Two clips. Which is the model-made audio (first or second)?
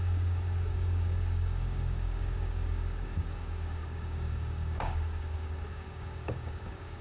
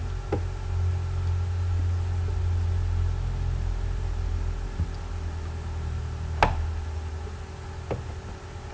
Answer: first